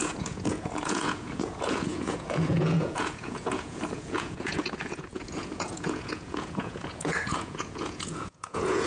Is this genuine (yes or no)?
no